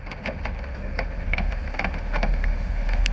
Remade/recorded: remade